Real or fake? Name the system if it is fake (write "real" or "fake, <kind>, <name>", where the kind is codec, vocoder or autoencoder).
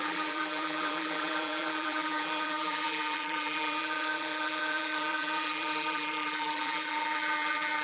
fake, vocoder, BigVGAN v2